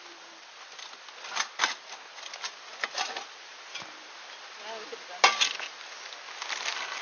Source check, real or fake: real